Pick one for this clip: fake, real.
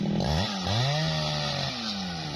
real